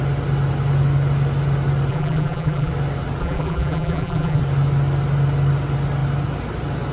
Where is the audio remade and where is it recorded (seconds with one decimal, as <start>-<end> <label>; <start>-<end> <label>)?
0.0-1.9 recorded; 1.9-2.7 remade; 2.7-3.2 recorded; 3.2-4.4 remade; 4.4-6.9 recorded